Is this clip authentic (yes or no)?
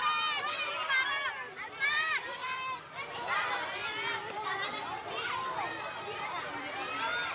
yes